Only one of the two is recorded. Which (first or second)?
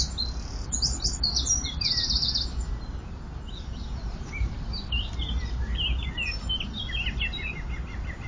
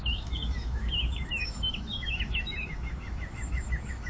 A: first